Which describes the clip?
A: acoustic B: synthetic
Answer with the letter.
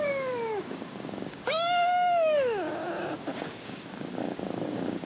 B